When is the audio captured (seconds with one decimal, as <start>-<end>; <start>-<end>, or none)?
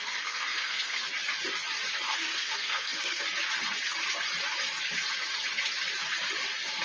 1.1-2.1; 3.2-6.8